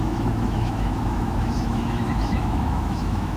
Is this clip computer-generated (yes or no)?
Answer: yes